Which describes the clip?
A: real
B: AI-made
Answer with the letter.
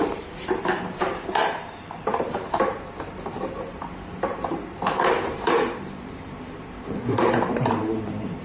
B